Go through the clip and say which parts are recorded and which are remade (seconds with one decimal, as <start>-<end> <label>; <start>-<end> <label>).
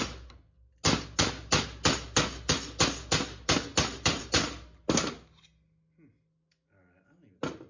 0.0-7.7 recorded